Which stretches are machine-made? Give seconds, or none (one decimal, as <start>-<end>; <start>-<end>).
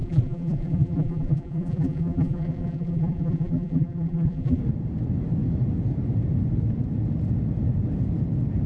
0.0-4.6